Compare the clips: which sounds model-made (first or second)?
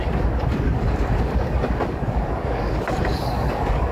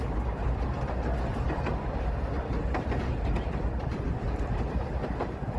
first